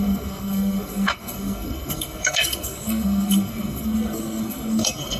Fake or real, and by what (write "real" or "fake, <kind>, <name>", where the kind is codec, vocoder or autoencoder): fake, codec, SNAC